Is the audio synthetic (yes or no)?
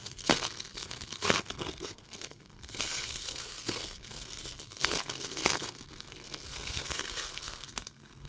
yes